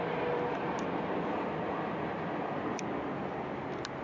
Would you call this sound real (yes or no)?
yes